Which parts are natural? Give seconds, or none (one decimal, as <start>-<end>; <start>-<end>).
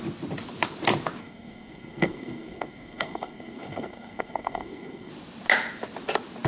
0.0-1.2; 5.1-6.5